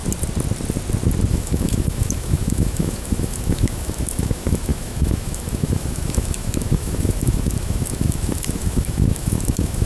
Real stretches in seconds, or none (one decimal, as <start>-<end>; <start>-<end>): 0.0-1.3